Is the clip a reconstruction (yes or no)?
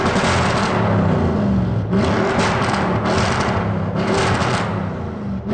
no